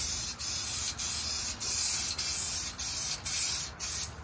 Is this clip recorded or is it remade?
recorded